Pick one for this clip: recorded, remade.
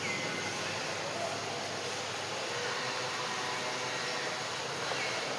recorded